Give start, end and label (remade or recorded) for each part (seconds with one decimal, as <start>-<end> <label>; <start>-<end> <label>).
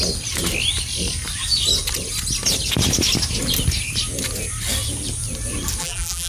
0.0-5.8 recorded; 5.8-6.3 remade